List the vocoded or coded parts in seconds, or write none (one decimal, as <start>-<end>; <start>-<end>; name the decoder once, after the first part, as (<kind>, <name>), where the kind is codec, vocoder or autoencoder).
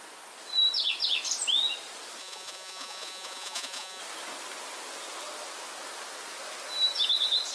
2.2-4.0 (vocoder, Vocos)